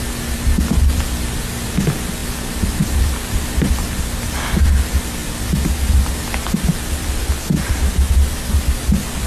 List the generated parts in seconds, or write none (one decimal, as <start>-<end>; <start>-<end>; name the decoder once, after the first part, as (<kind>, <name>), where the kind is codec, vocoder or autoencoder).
none